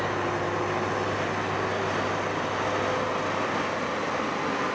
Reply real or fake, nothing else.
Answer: real